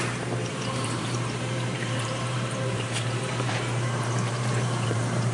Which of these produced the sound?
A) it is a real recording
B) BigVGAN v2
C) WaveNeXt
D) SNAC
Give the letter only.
B